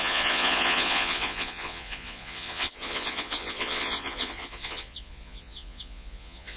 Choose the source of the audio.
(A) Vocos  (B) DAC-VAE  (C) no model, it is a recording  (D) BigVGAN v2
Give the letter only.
A